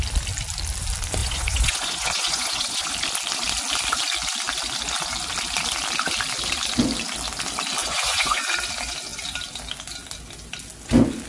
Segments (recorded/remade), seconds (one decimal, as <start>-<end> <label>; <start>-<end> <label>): 0.0-1.2 recorded; 1.2-2.9 remade; 2.9-7.8 recorded; 7.8-8.4 remade; 8.4-11.3 recorded